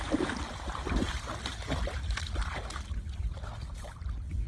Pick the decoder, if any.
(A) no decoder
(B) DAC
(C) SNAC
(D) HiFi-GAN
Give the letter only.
A